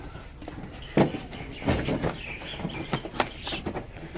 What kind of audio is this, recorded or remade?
recorded